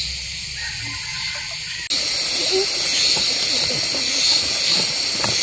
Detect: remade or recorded recorded